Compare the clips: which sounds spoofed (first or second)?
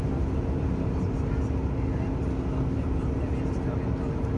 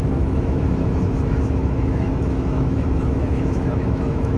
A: second